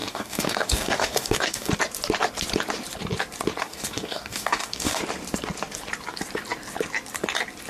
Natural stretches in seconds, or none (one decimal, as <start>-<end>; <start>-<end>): 1.7-3.6; 5.0-7.7

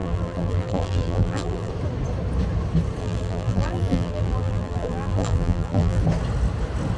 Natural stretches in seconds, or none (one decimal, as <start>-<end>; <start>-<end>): 1.7-3.0; 6.0-7.0

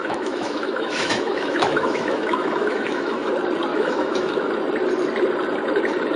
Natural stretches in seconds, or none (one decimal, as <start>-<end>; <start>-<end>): 3.3-3.7; 4.5-6.2

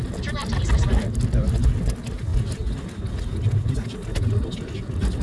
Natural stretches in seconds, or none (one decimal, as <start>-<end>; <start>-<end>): 0.0-5.2

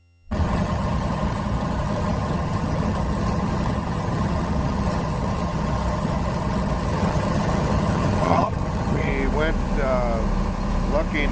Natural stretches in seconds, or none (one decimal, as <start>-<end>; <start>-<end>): 9.1-11.3

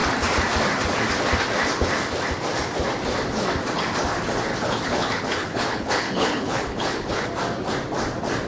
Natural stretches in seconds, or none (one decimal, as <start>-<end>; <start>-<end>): 0.0-4.5; 7.3-8.5

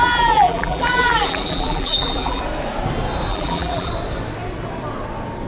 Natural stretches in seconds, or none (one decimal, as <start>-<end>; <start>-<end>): 2.4-3.3; 3.9-5.5

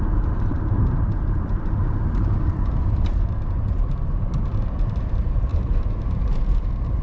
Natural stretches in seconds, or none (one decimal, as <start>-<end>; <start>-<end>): none